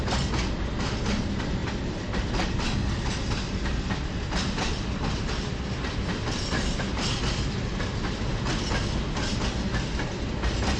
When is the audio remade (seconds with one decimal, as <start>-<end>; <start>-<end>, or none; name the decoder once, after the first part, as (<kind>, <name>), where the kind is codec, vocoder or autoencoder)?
none